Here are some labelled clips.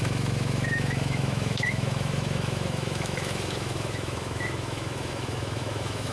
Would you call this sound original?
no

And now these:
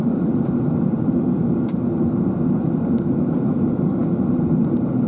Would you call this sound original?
yes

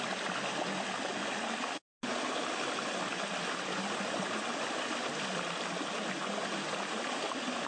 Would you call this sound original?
yes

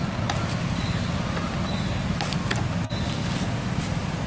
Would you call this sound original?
yes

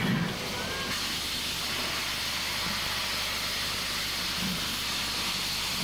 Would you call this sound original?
yes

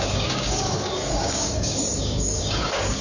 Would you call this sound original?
no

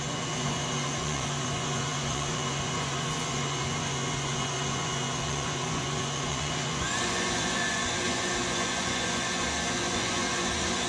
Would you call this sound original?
no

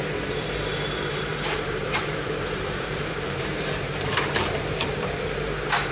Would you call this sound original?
no